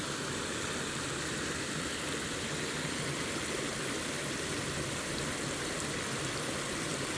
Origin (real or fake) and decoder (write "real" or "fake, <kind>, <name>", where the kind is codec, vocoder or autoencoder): real